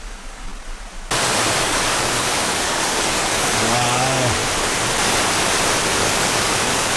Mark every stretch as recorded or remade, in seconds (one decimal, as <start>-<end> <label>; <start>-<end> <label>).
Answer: 0.0-0.5 remade; 0.5-1.6 recorded; 1.6-4.4 remade; 4.4-5.9 recorded; 5.9-7.0 remade